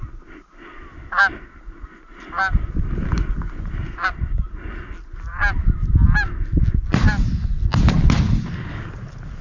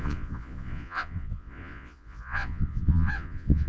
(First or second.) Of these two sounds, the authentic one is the first